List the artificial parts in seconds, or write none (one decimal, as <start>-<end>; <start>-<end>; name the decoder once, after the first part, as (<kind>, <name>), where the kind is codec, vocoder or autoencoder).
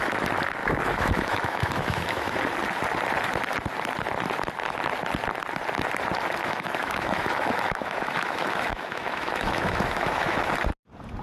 0.6-2.4 (autoencoder, DAC-VAE); 6.4-10.5